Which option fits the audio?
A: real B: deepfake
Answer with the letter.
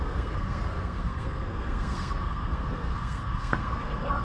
B